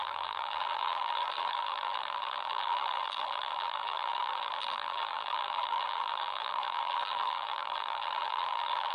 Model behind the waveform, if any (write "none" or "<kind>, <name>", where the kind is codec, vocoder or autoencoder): vocoder, BigVGAN v2